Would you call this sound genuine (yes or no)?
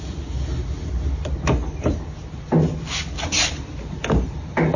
yes